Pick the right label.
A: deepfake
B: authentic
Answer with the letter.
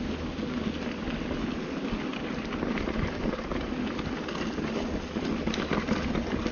B